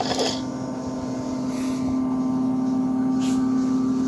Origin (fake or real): real